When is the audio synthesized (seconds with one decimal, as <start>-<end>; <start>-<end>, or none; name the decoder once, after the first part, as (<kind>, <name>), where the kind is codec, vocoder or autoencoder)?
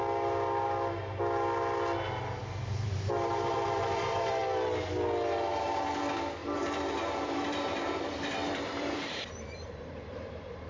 2.4-4.4 (vocoder, BigVGAN v2); 5.5-6.0; 6.4-10.7